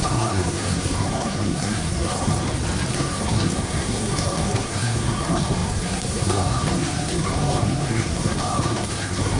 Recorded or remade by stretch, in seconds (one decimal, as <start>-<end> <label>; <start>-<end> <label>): 0.0-2.3 remade; 2.3-2.9 recorded; 2.9-9.4 remade